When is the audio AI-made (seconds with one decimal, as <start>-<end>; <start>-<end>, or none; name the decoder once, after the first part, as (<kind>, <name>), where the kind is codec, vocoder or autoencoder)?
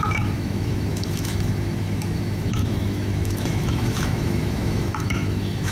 0.0-5.7 (autoencoder, DAC-VAE)